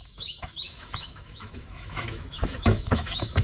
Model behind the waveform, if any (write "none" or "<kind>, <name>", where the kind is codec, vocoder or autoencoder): autoencoder, DAC-VAE